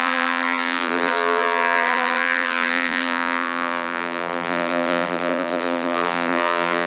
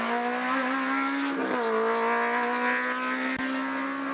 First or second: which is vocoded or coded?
first